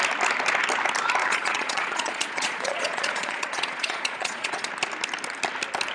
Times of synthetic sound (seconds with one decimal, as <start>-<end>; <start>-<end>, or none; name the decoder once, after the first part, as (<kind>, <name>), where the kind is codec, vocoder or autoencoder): 1.2-4.7 (vocoder, Vocos)